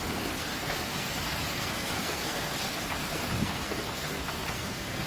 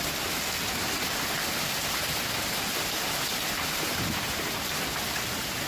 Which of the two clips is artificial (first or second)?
first